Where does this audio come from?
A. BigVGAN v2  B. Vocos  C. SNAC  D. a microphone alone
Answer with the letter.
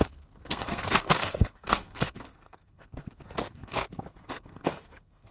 C